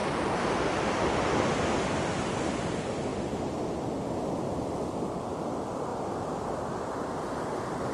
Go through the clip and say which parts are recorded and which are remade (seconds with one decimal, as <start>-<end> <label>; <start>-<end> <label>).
0.0-1.0 remade; 1.0-5.9 recorded; 5.9-7.0 remade; 7.0-7.9 recorded